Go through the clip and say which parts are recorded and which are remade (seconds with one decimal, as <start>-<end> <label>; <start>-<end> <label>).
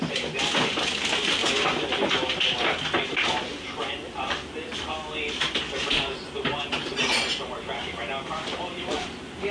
0.0-9.5 recorded